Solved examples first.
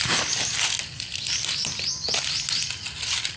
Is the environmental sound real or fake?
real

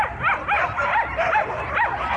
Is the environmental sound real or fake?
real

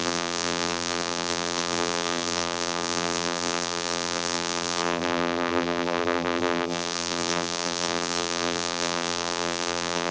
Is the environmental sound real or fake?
fake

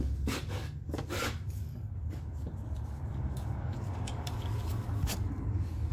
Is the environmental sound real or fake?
fake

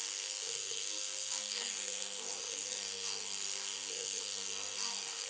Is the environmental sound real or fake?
fake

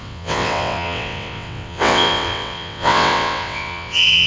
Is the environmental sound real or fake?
fake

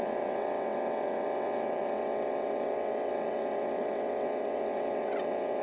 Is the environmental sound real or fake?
fake